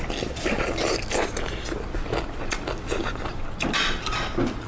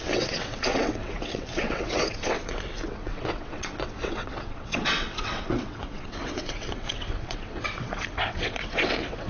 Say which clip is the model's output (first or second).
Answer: second